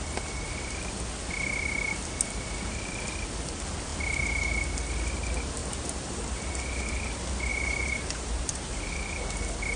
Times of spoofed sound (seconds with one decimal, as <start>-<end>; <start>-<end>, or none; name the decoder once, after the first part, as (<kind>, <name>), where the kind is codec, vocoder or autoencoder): 5.6-6.5 (vocoder, BigVGAN v2); 7.5-8.9